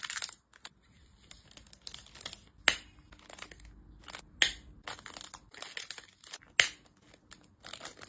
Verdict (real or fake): real